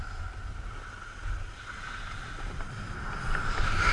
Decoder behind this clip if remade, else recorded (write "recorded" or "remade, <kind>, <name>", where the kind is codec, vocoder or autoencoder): recorded